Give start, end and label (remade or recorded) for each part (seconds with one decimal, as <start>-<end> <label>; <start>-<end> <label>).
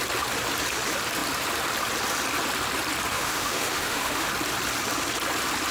0.0-3.1 recorded; 3.1-4.3 remade; 4.3-5.7 recorded